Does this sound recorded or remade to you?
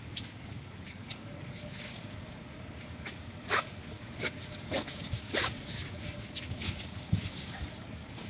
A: remade